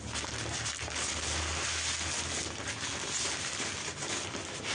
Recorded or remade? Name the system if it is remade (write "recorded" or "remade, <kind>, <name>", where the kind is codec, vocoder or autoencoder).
recorded